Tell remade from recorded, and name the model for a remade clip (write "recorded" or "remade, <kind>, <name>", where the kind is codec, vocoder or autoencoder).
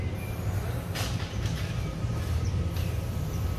remade, vocoder, BigVGAN v2